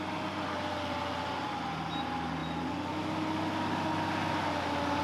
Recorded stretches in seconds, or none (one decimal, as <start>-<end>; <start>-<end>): 0.0-5.0